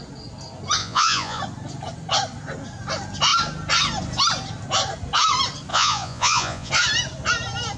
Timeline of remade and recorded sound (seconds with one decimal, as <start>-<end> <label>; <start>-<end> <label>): 0.0-0.8 recorded; 0.8-1.4 remade; 1.4-5.7 recorded; 5.7-6.7 remade; 6.7-7.8 recorded